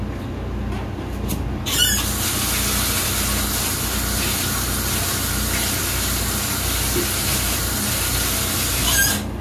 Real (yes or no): yes